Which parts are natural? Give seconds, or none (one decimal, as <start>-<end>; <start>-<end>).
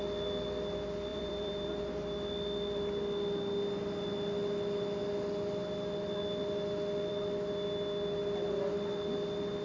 0.0-1.1; 2.0-9.6